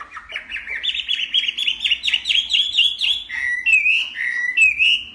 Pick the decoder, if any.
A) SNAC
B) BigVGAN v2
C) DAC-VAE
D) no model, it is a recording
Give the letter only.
D